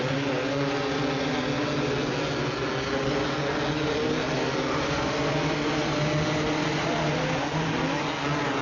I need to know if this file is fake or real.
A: real